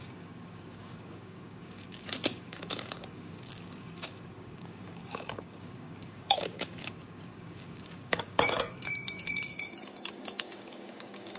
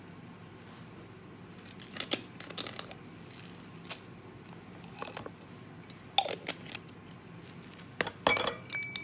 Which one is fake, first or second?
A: first